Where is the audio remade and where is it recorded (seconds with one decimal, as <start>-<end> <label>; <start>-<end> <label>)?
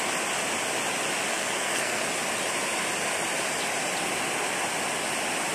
0.0-1.3 recorded; 1.3-2.0 remade; 2.0-5.5 recorded